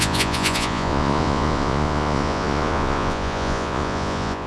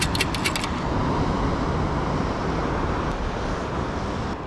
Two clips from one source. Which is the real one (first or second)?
second